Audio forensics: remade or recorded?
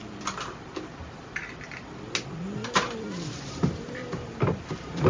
recorded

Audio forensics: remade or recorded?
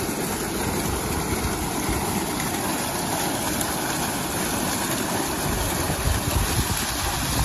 recorded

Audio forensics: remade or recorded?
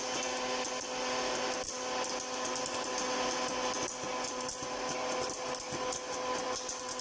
recorded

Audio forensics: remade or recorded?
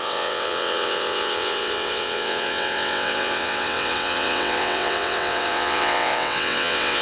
remade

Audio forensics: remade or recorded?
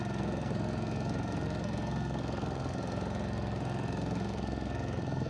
remade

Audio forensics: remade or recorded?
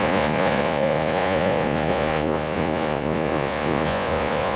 remade